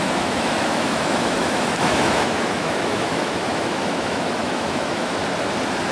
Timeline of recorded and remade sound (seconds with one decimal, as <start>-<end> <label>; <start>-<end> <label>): 0.0-5.2 remade; 5.2-5.9 recorded